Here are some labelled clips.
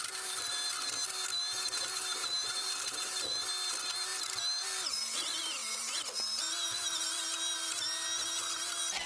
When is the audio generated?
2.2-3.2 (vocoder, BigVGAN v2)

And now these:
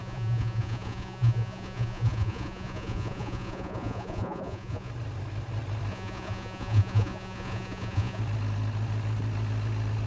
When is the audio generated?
0.0-4.9 (vocoder, Vocos); 5.9-8.2

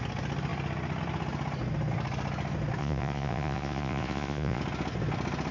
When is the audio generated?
2.8-4.6 (vocoder, Vocos)

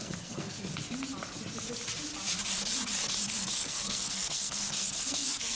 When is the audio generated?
0.0-0.7 (codec, SNAC); 3.4-5.6

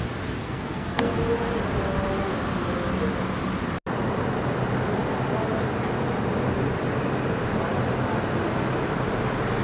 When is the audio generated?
0.4-1.2 (codec, SNAC)

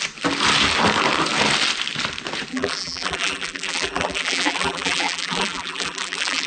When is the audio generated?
2.5-6.5 (vocoder, BigVGAN v2)